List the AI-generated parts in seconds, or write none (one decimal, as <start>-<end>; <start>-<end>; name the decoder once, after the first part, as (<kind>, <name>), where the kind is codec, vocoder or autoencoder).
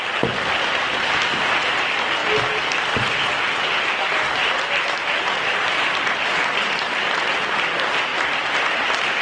0.0-2.2 (vocoder, BigVGAN v2); 7.3-9.2